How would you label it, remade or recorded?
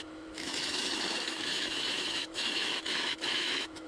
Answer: remade